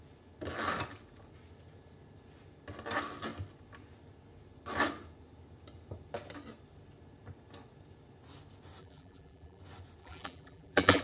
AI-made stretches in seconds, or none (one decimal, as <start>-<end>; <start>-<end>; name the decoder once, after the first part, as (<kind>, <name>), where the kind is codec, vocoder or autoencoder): 8.8-9.6 (vocoder, BigVGAN v2); 10.0-11.0